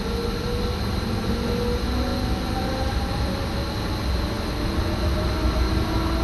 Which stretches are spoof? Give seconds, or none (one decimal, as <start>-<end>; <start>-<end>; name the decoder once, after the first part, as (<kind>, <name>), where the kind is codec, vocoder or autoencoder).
none